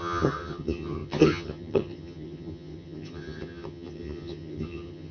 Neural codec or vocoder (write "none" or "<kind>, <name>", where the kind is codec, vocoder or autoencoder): vocoder, HiFi-GAN